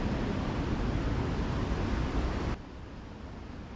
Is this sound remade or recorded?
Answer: recorded